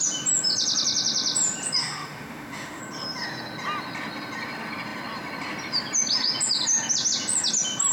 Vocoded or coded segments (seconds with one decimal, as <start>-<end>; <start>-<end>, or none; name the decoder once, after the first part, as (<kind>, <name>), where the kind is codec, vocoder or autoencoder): 1.8-2.8 (autoencoder, DAC-VAE)